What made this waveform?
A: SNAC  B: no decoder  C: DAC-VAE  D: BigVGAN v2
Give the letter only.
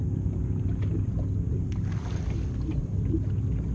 B